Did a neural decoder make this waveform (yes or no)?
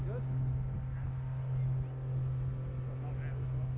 no